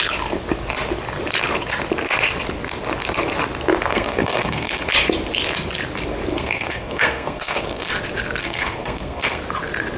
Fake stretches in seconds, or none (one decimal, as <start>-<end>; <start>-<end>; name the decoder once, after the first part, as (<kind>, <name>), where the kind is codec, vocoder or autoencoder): 3.9-4.9 (codec, SNAC); 6.3-7.9; 8.4-9.4